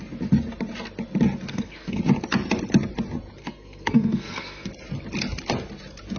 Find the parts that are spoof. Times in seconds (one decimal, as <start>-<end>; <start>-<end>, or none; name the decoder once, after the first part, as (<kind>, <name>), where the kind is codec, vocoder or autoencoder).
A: 1.5-2.0 (codec, SNAC); 3.4-4.7